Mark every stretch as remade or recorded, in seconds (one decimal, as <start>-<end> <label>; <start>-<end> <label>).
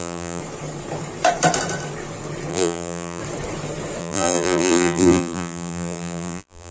0.0-0.4 remade; 0.4-2.5 recorded; 2.5-3.2 remade; 3.2-4.0 recorded; 4.0-6.7 remade